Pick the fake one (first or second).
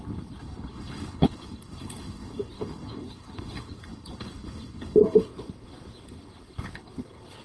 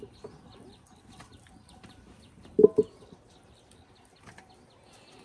first